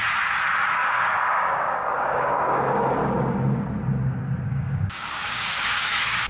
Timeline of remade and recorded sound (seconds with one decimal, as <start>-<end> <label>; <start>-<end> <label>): 0.0-0.6 recorded; 0.6-3.0 remade; 3.0-4.5 recorded; 4.5-6.3 remade